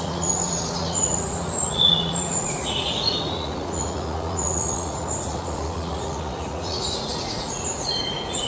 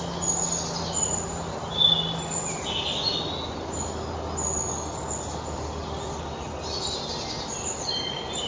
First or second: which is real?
second